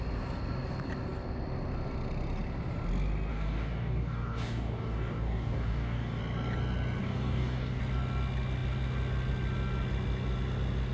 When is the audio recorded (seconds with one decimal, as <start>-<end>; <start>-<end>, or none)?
0.0-3.3; 6.2-7.0; 7.8-10.9